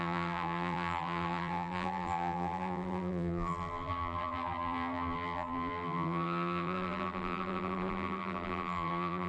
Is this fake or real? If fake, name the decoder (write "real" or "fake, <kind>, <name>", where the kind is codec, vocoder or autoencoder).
fake, vocoder, BigVGAN v2